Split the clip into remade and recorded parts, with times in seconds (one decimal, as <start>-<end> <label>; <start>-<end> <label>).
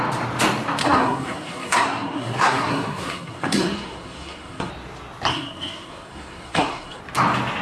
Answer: 0.0-0.8 recorded; 0.8-4.7 remade; 4.7-5.3 recorded; 5.3-7.0 remade; 7.0-7.6 recorded